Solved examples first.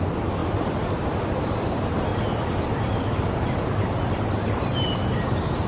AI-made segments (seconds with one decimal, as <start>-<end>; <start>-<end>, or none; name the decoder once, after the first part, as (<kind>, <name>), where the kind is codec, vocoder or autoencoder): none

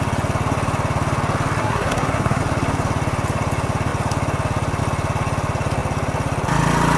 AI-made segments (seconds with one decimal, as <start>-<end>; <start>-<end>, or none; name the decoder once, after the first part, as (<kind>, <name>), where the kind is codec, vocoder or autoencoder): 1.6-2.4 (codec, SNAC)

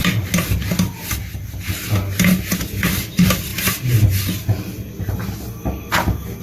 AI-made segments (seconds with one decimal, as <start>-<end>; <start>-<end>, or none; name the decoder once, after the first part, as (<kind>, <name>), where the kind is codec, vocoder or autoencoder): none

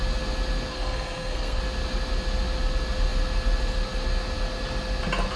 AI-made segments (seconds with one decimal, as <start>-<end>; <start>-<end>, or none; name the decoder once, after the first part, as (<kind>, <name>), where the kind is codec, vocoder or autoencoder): 0.7-1.6 (codec, SNAC)

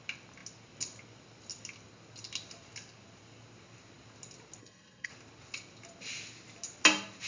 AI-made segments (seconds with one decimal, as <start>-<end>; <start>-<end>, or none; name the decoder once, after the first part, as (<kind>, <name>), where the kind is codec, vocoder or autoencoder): 4.6-5.1 (codec, SNAC)